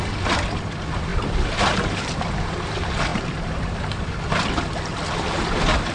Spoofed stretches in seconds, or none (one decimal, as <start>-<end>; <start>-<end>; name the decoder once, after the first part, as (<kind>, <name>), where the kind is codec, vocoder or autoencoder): 1.1-2.4 (vocoder, BigVGAN v2); 3.1-4.2